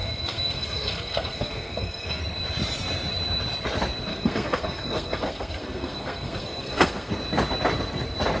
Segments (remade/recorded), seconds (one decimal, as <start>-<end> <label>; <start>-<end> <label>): 0.0-2.2 remade; 2.2-4.1 recorded; 4.1-7.1 remade; 7.1-8.4 recorded